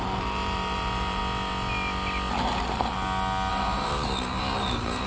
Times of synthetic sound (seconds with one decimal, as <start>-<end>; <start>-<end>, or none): 0.0-1.2; 3.5-5.1